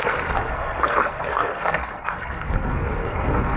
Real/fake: fake